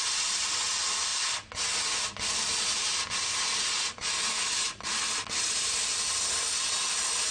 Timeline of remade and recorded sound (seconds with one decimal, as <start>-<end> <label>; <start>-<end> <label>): 0.0-7.3 recorded